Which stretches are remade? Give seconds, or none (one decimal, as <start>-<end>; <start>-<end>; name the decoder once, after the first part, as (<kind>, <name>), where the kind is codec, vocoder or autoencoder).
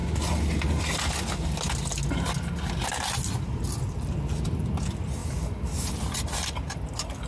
none